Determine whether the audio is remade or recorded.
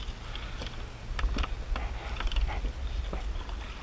recorded